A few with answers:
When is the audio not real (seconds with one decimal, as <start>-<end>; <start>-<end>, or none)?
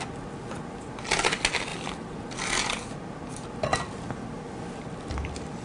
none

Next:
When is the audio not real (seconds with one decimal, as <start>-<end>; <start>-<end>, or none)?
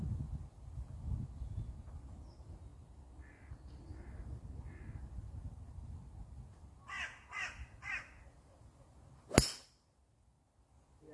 none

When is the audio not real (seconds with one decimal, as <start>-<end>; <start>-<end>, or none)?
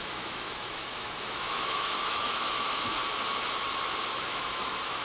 0.0-2.9; 4.0-5.0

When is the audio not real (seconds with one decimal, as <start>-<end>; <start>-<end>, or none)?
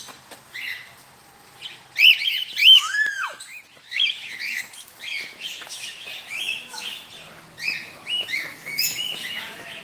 2.6-7.1; 7.8-9.8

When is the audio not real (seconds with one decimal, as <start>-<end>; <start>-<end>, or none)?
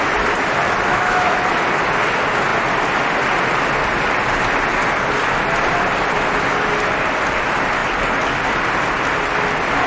0.9-1.4